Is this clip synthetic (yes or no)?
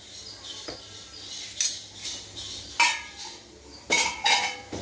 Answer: no